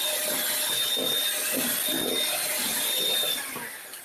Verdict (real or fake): real